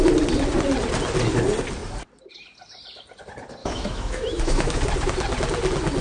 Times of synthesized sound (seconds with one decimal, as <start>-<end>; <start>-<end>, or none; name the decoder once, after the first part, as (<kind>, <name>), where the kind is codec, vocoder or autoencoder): 3.6-4.8 (autoencoder, DAC-VAE)